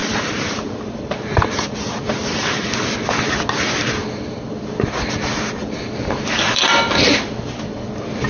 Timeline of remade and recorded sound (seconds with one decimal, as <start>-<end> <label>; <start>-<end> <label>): 0.0-2.7 remade; 2.7-5.6 recorded; 5.6-6.8 remade; 6.8-8.3 recorded